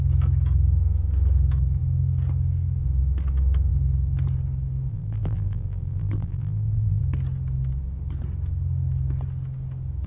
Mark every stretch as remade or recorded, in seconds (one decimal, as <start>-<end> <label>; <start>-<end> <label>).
0.0-4.9 recorded; 4.9-7.0 remade; 7.0-10.1 recorded